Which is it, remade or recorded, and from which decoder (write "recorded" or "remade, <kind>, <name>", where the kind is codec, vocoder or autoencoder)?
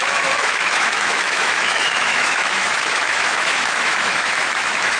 remade, autoencoder, DAC-VAE